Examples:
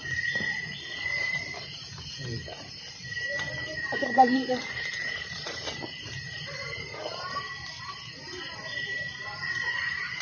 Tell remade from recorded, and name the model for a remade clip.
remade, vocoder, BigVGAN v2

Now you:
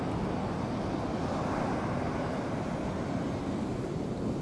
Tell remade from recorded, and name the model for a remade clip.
recorded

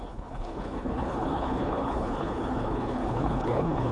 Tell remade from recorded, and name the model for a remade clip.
remade, codec, HILCodec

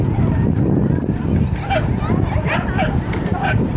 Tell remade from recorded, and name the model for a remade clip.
recorded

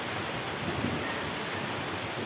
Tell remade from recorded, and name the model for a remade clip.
recorded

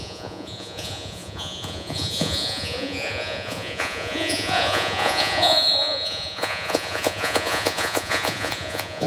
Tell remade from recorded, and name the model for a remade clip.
remade, vocoder, Vocos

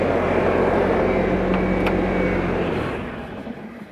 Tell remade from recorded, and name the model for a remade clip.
recorded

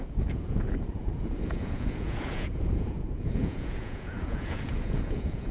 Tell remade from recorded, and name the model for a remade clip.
remade, vocoder, Vocos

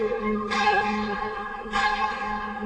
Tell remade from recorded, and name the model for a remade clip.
remade, codec, SNAC